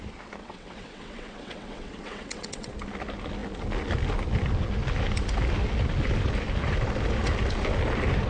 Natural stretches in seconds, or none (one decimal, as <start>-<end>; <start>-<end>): 0.0-0.4; 2.7-8.3